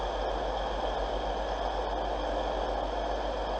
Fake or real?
real